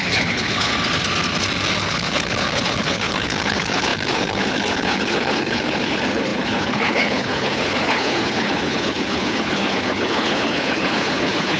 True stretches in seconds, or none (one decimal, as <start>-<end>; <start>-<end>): 0.7-1.8